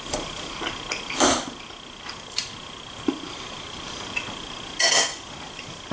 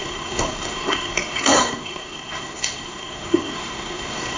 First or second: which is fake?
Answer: second